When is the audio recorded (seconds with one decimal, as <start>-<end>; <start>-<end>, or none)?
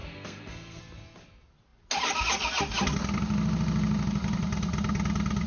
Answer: 0.8-5.5